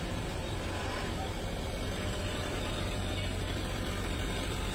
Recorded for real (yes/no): no